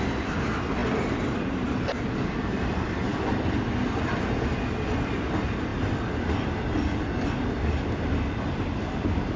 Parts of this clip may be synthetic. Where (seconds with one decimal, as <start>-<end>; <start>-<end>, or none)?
none